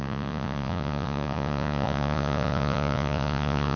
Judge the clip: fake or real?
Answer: fake